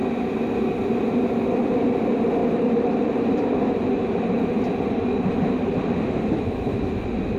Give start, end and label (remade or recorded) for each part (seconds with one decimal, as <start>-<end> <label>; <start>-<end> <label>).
0.0-2.4 recorded; 2.4-6.8 remade; 6.8-7.4 recorded